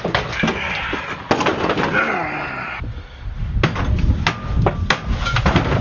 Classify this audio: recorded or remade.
recorded